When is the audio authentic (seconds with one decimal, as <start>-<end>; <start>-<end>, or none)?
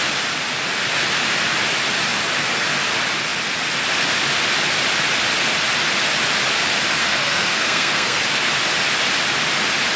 0.0-7.0; 8.2-10.0